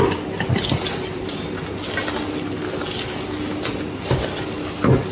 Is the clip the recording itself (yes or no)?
yes